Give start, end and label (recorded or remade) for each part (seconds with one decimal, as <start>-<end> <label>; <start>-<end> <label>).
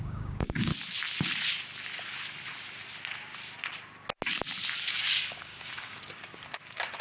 0.0-0.7 remade; 0.7-4.9 recorded; 4.9-7.0 remade